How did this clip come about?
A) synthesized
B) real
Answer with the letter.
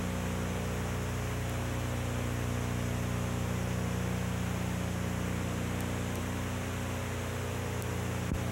B